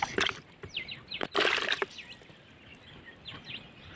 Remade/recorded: recorded